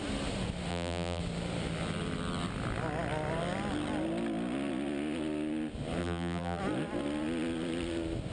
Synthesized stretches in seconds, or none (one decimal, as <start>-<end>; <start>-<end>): 0.7-1.2; 6.0-6.6